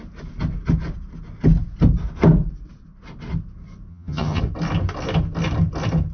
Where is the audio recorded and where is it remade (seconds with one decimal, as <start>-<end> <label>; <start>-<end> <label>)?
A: 0.0-3.9 recorded; 3.9-4.4 remade; 4.4-6.1 recorded